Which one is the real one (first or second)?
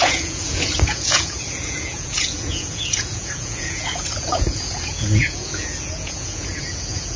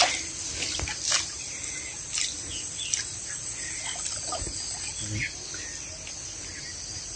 second